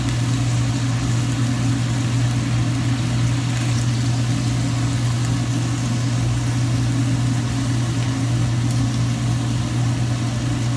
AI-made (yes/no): no